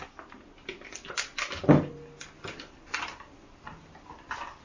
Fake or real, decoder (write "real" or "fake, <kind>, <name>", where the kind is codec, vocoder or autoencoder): real